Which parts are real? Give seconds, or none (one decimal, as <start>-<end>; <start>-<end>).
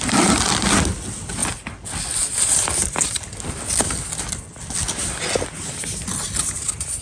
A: 0.0-7.0